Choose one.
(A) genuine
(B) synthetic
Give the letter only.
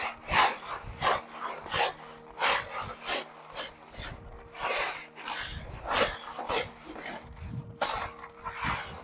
A